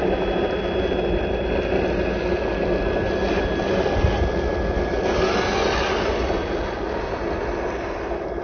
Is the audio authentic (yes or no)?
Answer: yes